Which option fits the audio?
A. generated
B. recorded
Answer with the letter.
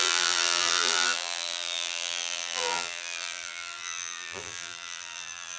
A